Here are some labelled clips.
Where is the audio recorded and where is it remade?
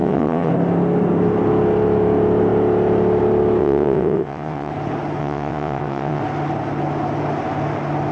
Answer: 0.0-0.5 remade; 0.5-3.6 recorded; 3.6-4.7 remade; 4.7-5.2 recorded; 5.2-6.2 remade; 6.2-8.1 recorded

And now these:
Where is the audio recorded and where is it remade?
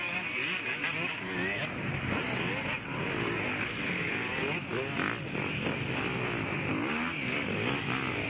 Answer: 0.0-8.3 recorded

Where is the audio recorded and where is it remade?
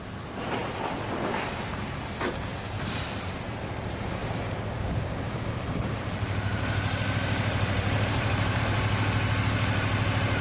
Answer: 0.0-4.2 recorded; 4.2-8.6 remade; 8.6-10.4 recorded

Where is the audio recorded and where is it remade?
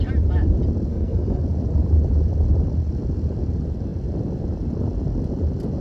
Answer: 0.0-0.9 recorded; 0.9-1.4 remade; 1.4-5.8 recorded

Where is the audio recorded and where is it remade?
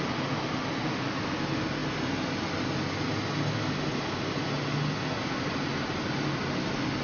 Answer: 0.0-7.0 recorded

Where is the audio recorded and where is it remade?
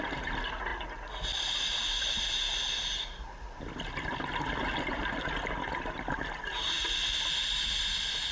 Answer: 0.0-8.3 recorded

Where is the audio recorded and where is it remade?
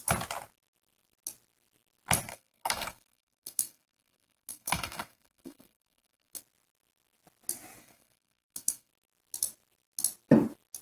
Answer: 0.0-2.3 recorded; 2.3-6.4 remade; 6.4-7.8 recorded; 7.8-8.9 remade; 8.9-10.8 recorded